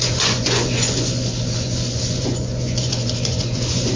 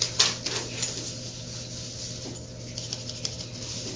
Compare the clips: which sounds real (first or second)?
second